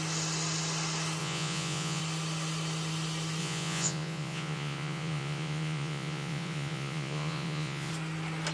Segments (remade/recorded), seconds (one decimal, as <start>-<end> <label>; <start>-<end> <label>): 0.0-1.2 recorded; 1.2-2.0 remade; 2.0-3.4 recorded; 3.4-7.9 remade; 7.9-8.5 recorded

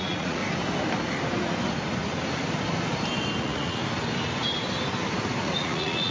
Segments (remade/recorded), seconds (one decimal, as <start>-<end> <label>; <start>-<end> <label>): 0.0-0.4 remade; 0.4-3.4 recorded; 3.4-3.8 remade; 3.8-5.4 recorded; 5.4-6.1 remade

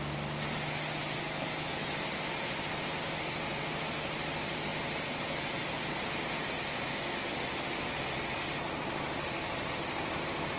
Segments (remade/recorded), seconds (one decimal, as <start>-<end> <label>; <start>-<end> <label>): 0.0-10.6 recorded

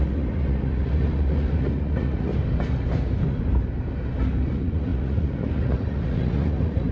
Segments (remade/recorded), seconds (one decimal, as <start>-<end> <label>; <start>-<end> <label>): 0.0-2.3 remade; 2.3-4.5 recorded; 4.5-6.9 remade

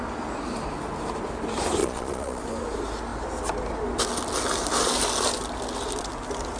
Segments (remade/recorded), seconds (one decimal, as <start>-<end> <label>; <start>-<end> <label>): 0.0-1.8 recorded; 1.8-2.4 remade; 2.4-6.6 recorded

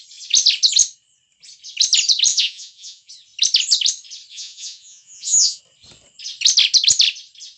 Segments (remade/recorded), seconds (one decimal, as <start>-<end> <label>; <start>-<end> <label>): 0.0-2.3 recorded; 2.3-3.1 remade; 3.1-4.3 recorded; 4.3-5.6 remade; 5.6-7.6 recorded